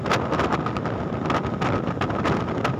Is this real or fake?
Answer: real